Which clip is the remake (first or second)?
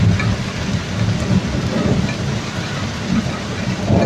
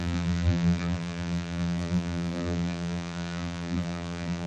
second